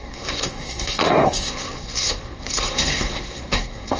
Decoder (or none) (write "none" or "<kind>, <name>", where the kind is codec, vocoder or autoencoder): codec, SNAC